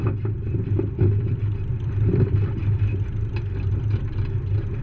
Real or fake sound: real